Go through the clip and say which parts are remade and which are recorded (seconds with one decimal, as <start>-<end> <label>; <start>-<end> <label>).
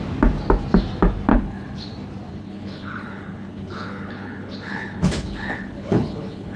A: 0.0-1.3 recorded; 1.3-1.9 remade; 1.9-2.3 recorded; 2.3-6.6 remade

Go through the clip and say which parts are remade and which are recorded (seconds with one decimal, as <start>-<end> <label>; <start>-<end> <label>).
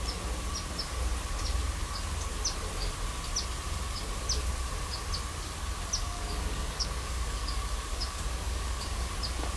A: 0.0-6.0 recorded; 6.0-9.1 remade; 9.1-9.6 recorded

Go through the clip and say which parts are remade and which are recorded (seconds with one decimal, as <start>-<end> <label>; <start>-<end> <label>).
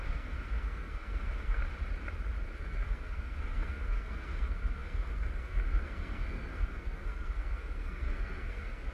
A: 0.0-1.6 remade; 1.6-2.6 recorded; 2.6-8.9 remade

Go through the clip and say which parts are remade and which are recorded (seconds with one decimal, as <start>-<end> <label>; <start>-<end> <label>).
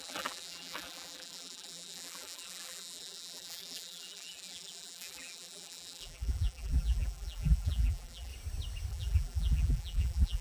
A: 0.0-8.3 remade; 8.3-8.9 recorded; 8.9-10.4 remade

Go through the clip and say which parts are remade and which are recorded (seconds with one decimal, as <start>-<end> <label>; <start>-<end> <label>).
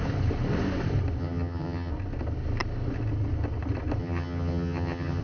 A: 0.0-1.2 recorded; 1.2-1.9 remade; 1.9-4.0 recorded; 4.0-5.2 remade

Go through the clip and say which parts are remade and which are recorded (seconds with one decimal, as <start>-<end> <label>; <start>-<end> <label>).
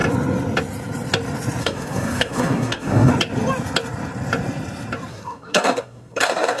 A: 0.0-1.6 recorded; 1.6-3.1 remade; 3.1-5.1 recorded; 5.1-6.6 remade